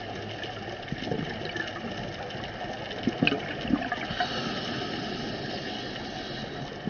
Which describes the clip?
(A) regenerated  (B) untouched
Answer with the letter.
B